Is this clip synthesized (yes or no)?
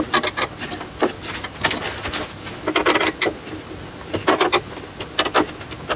no